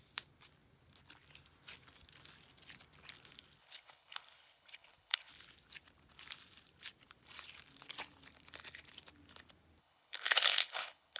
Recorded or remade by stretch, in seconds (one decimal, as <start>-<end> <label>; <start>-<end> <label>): 0.0-3.6 recorded; 3.6-5.3 remade; 5.3-9.8 recorded; 9.8-11.2 remade